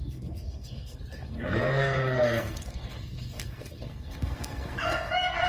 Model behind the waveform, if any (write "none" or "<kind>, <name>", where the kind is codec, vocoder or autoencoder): codec, SNAC